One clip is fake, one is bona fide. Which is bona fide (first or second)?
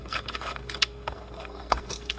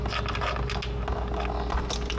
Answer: second